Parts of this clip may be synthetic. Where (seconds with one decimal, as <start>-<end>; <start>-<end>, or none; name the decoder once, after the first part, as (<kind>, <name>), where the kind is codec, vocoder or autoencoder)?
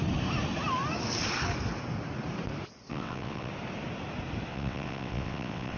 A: 2.9-3.5 (vocoder, WaveNeXt); 4.5-5.8